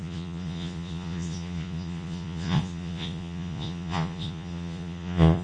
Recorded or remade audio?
remade